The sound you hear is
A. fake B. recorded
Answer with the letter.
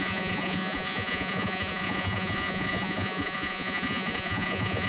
A